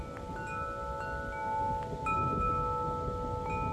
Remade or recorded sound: recorded